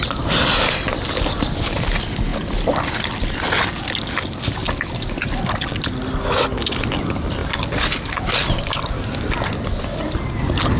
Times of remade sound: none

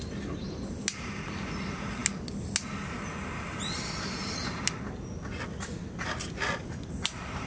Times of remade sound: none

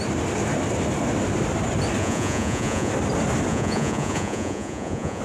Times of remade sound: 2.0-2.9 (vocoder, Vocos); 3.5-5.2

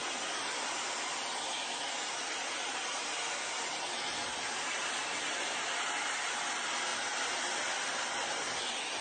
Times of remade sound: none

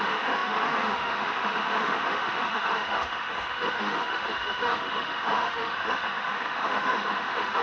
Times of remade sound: 0.0-7.6 (autoencoder, DAC-VAE)